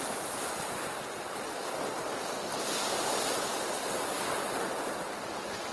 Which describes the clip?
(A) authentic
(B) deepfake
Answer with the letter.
A